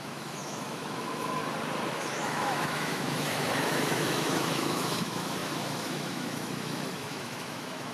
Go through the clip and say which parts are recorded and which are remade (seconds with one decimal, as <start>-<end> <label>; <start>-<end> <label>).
0.0-1.4 remade; 1.4-1.9 recorded; 1.9-7.9 remade